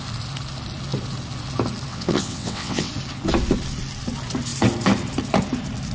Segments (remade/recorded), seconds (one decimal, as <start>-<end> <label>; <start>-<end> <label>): 0.0-1.9 recorded; 1.9-2.9 remade; 2.9-5.9 recorded

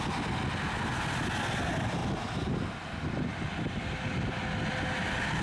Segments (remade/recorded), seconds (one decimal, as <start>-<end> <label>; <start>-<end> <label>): 0.0-5.4 recorded

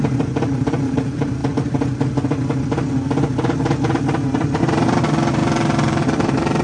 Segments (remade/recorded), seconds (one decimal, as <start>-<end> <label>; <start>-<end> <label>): 0.0-1.4 remade; 1.4-4.6 recorded; 4.6-6.6 remade

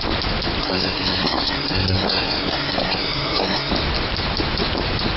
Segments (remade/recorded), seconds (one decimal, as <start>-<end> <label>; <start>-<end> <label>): 0.0-0.6 recorded; 0.6-3.7 remade; 3.7-5.2 recorded

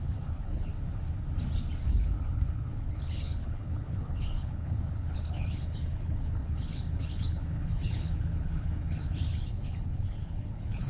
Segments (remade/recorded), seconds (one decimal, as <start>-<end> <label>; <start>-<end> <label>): 0.0-0.7 remade; 0.7-1.8 recorded; 1.8-10.9 remade